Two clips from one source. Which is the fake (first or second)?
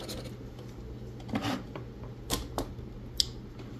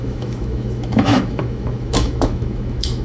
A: second